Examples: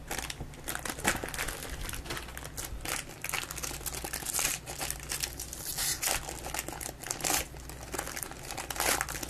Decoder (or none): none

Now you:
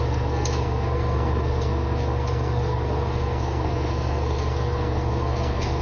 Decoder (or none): codec, SNAC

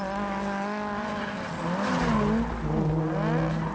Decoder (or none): none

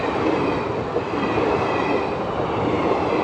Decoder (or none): none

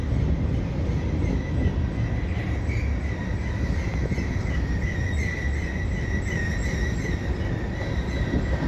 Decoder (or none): none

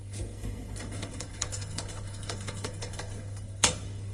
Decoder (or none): codec, SNAC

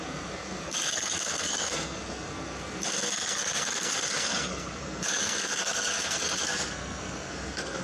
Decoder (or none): codec, SNAC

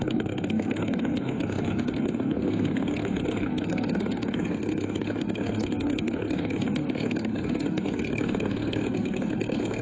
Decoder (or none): codec, SNAC